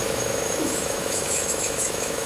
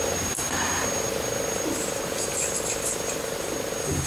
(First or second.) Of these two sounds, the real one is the second